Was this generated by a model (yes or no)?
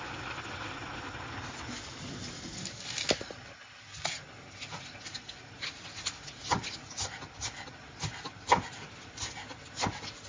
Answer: no